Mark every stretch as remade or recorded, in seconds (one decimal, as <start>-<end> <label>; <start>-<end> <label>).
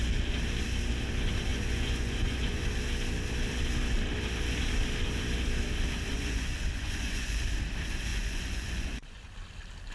0.0-1.5 recorded; 1.5-2.6 remade; 2.6-6.1 recorded; 6.1-7.5 remade; 7.5-8.1 recorded; 8.1-9.3 remade; 9.3-9.9 recorded